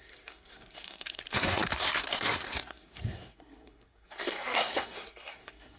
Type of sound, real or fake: fake